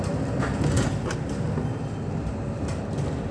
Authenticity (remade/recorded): recorded